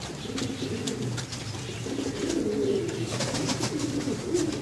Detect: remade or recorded remade